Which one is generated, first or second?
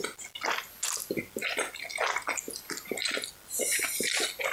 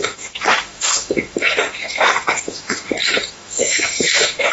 second